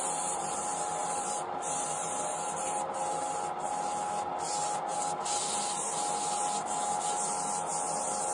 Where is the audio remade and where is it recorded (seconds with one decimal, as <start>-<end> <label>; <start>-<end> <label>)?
0.0-1.0 recorded; 1.0-2.9 remade; 2.9-8.3 recorded